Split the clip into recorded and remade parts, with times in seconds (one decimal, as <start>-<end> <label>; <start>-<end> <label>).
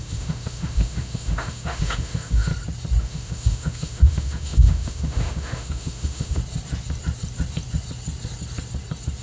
0.0-2.5 remade; 2.5-3.0 recorded; 3.0-6.4 remade; 6.4-9.2 recorded